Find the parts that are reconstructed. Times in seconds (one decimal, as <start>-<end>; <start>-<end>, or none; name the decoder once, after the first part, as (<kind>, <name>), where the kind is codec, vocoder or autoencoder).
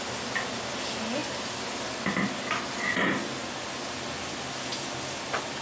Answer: none